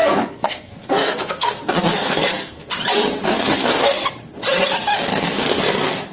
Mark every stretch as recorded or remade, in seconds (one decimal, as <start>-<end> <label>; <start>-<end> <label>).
0.0-1.6 remade; 1.6-2.0 recorded; 2.0-2.7 remade; 2.7-3.2 recorded; 3.2-4.1 remade; 4.1-5.1 recorded; 5.1-5.6 remade; 5.6-6.1 recorded